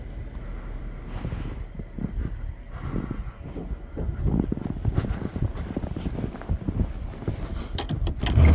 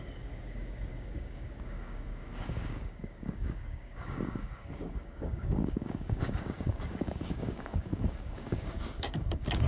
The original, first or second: first